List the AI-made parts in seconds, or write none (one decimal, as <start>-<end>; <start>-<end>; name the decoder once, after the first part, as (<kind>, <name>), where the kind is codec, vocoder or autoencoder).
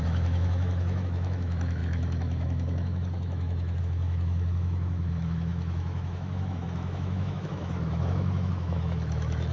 0.0-9.5 (autoencoder, DAC-VAE)